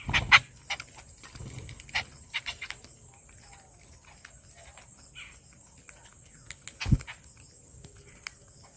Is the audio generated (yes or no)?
no